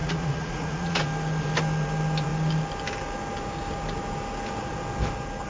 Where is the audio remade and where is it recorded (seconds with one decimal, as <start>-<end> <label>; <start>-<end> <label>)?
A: 0.0-1.0 remade; 1.0-5.5 recorded